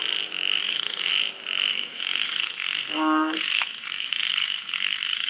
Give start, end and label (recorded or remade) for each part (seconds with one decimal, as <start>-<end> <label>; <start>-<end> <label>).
0.0-0.6 recorded; 0.6-1.1 remade; 1.1-1.7 recorded; 1.7-5.3 remade